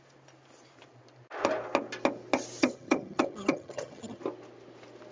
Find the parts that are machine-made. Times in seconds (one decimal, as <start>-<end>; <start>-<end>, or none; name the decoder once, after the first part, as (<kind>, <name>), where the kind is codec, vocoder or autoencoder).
2.6-4.2 (vocoder, HiFi-GAN)